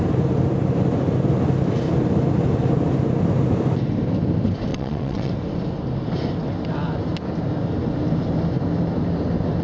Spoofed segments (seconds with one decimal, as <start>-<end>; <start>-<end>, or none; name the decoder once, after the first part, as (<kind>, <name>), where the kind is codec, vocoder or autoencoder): 4.7-5.3 (vocoder, WaveNeXt)